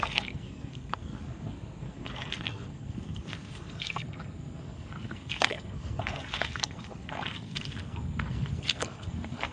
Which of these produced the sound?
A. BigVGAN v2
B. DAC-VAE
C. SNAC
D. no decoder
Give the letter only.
C